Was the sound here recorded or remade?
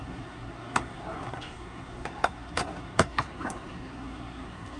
remade